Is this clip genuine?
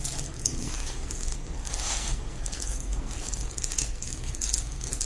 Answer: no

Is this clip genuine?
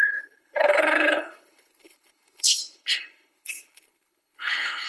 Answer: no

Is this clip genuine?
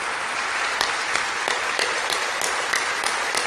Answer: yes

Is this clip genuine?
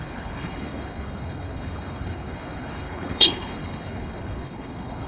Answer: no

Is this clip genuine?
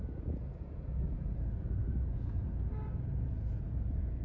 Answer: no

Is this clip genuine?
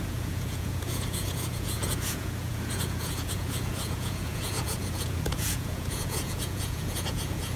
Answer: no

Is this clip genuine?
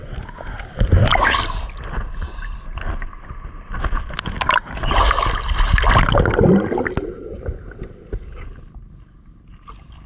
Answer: yes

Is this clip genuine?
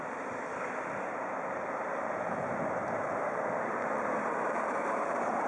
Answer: no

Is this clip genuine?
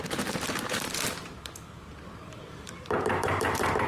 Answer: no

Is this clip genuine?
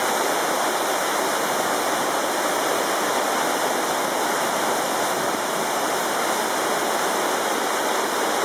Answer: yes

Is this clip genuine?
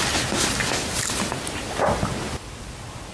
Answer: yes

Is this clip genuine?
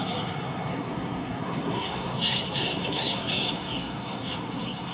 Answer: no